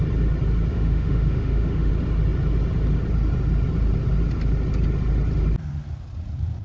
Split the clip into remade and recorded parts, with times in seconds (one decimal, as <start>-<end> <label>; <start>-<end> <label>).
0.0-0.7 recorded; 0.7-1.9 remade; 1.9-6.6 recorded